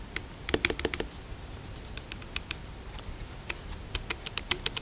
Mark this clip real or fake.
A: real